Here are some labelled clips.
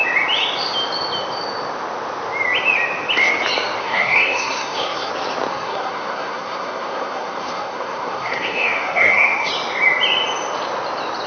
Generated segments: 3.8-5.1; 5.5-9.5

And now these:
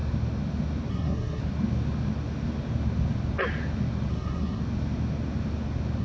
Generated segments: 0.9-1.4; 4.1-4.6

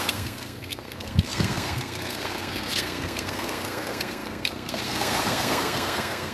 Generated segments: 0.0-6.3

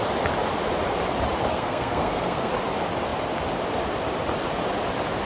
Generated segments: 1.5-2.5

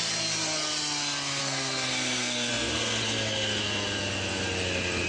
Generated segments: 1.4-2.5

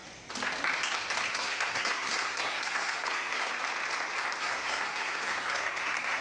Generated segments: 1.3-3.5; 4.4-6.2